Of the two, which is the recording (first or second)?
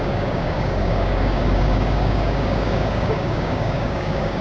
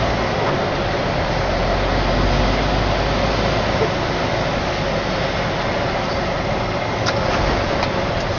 second